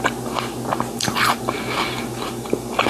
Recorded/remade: recorded